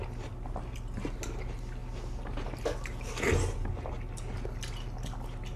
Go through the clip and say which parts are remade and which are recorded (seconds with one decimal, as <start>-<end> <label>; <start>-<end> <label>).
0.0-5.6 recorded